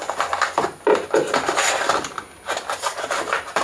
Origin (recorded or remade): recorded